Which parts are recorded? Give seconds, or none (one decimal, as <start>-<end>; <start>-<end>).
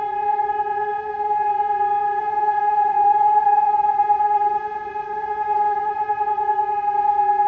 0.0-0.8; 1.5-2.2; 6.1-7.5